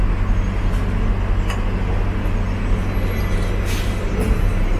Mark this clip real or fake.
real